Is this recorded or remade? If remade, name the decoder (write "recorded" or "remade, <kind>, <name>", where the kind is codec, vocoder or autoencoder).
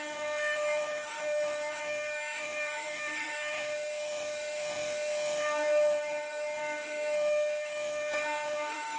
remade, autoencoder, DAC-VAE